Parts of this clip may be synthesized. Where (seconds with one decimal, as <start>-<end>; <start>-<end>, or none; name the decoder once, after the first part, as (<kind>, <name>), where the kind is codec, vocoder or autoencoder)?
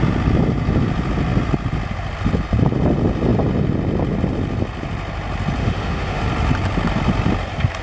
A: 5.6-6.2 (autoencoder, DAC-VAE)